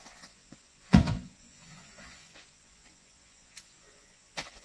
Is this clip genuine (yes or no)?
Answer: no